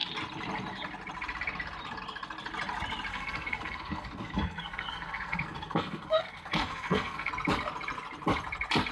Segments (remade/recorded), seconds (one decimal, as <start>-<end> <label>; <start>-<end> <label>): 0.0-3.1 recorded; 3.1-7.3 remade; 7.3-8.9 recorded